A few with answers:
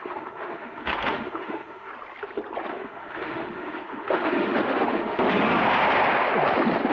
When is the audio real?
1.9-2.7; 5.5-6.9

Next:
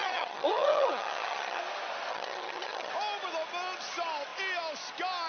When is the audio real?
1.6-2.1; 2.9-5.3